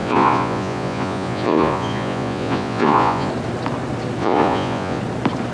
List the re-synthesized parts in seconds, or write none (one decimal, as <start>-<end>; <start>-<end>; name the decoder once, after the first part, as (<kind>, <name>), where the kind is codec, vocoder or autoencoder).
0.0-3.3 (vocoder, Vocos); 4.2-5.0